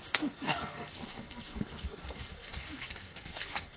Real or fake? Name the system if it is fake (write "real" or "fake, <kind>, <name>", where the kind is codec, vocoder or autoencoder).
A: fake, codec, SNAC